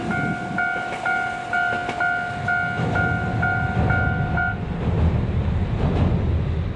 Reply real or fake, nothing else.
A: real